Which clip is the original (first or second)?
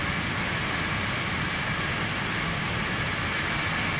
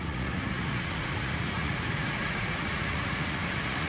first